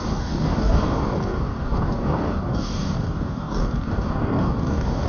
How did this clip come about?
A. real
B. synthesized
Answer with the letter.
B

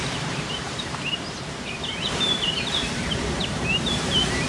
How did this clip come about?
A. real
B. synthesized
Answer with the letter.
B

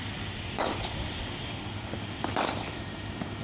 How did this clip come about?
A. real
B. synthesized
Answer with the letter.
B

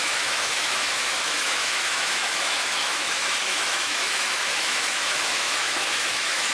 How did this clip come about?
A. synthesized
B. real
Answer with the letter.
A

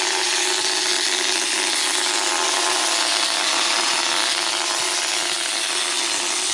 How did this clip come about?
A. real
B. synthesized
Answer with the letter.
A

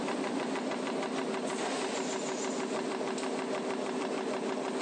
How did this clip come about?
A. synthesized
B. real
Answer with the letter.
B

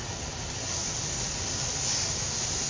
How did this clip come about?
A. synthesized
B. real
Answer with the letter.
B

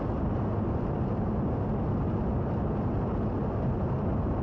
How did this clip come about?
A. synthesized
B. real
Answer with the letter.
B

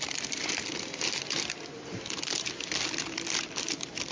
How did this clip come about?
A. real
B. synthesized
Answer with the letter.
B